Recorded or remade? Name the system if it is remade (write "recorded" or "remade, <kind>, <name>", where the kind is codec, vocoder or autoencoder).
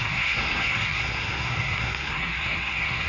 remade, codec, SNAC